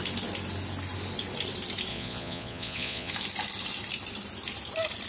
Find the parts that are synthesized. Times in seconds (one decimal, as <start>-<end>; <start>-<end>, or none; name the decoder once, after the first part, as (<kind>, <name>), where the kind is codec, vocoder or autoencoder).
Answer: 1.9-3.1 (vocoder, Vocos)